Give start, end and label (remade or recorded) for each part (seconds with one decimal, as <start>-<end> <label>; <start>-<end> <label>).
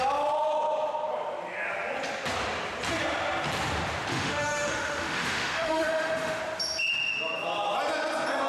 0.0-4.1 recorded; 4.1-6.4 remade; 6.4-8.5 recorded